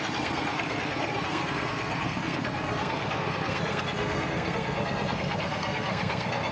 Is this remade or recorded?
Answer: remade